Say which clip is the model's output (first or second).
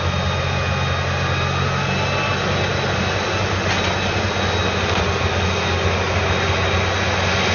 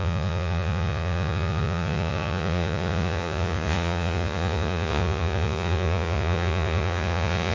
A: second